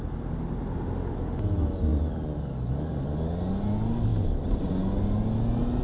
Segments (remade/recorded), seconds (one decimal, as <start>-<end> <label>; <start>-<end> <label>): 0.0-5.8 recorded